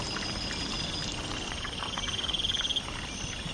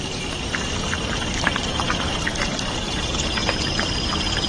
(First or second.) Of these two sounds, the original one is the first